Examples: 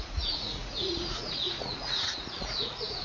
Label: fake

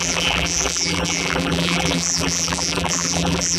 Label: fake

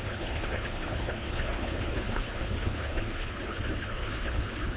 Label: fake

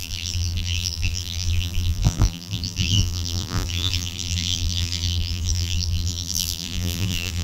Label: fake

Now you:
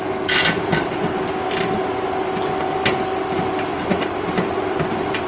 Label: real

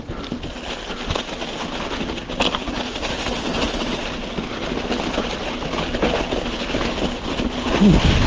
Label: real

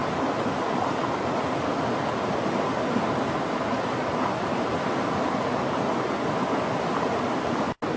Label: real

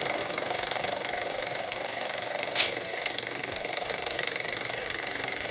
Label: fake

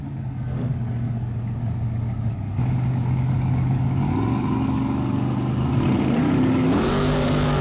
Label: fake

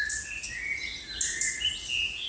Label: real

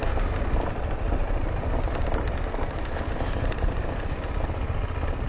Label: real